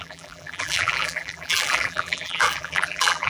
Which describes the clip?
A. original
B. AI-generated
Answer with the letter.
B